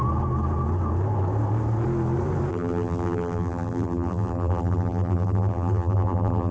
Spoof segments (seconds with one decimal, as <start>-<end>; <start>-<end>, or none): 2.5-6.5